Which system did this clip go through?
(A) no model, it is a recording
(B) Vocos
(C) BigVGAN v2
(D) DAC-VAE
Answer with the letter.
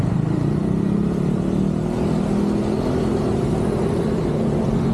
A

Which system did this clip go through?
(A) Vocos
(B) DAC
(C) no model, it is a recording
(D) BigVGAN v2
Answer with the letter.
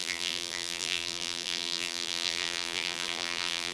D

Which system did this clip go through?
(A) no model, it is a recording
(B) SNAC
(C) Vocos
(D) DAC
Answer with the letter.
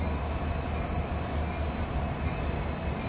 A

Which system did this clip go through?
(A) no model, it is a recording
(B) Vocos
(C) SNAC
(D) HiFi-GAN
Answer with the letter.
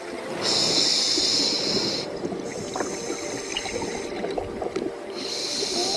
A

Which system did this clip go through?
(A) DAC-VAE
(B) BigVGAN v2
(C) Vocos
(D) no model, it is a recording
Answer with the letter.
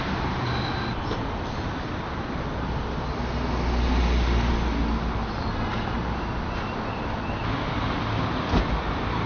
D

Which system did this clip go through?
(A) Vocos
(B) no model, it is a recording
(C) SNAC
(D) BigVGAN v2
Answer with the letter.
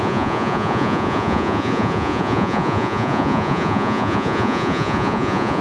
A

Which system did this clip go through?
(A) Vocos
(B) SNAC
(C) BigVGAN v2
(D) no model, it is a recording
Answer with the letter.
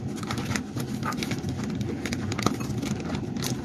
D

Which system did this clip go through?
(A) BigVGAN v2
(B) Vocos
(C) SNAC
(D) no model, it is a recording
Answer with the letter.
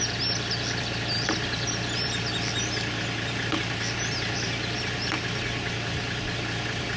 D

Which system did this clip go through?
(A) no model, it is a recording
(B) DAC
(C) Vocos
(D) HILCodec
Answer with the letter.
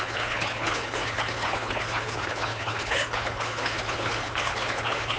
D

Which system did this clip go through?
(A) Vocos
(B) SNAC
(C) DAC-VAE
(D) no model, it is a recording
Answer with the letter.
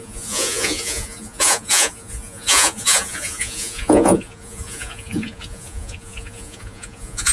A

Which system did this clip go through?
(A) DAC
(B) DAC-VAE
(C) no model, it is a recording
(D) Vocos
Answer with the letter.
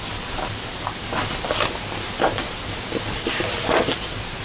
C